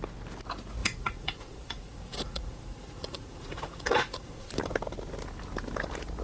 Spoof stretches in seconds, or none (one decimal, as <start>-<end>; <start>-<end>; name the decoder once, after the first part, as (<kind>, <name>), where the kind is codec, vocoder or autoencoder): 0.8-4.5 (vocoder, Vocos)